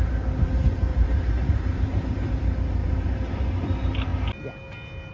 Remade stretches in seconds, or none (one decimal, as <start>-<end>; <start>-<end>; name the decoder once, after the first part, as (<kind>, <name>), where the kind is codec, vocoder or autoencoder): 0.9-2.3 (vocoder, BigVGAN v2); 2.8-3.4